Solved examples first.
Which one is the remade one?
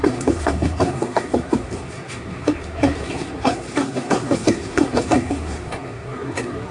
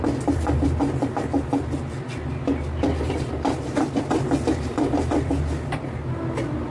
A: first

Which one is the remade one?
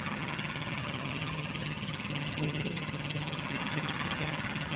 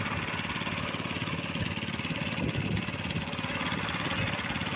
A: first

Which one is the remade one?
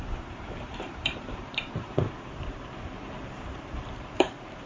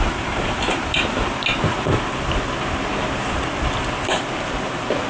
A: first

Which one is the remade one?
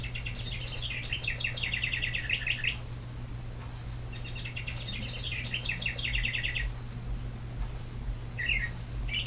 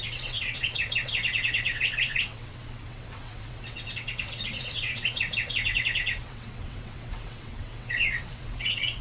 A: second